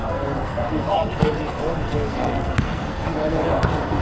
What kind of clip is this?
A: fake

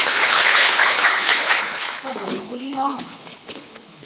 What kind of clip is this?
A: fake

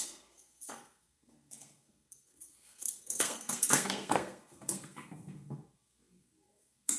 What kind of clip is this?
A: fake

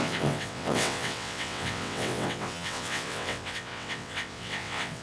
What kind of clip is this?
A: fake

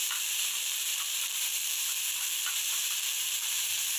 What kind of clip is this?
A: fake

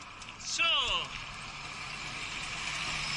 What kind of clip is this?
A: real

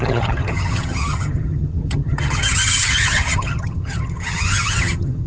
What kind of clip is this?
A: fake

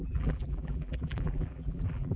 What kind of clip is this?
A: fake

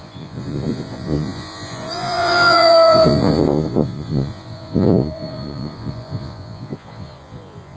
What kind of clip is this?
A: fake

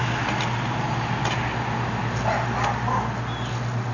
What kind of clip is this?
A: real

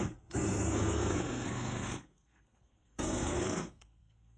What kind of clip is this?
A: fake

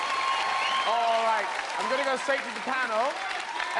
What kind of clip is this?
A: real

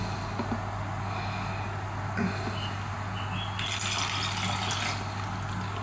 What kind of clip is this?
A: real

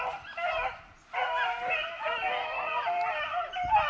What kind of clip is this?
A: real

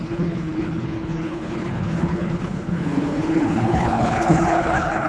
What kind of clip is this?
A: fake